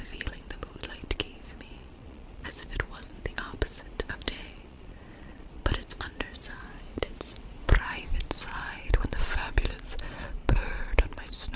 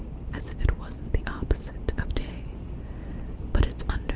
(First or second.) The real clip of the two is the second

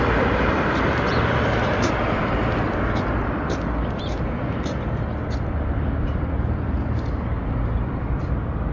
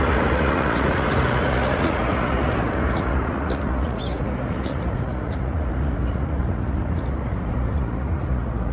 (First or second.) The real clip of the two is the first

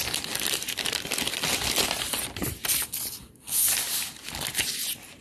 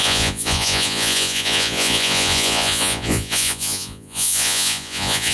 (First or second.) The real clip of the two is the first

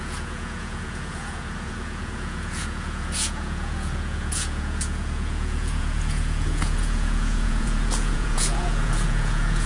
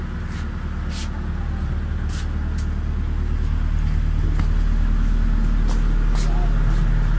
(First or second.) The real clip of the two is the second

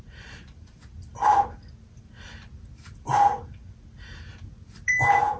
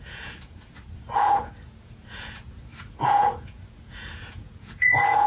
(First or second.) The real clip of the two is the first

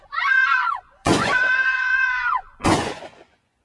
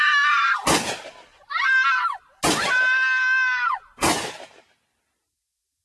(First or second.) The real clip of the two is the second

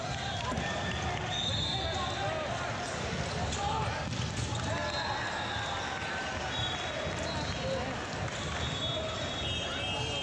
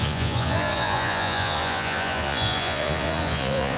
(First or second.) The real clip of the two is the first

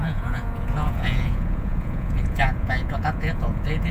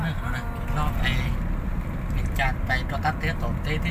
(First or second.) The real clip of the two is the second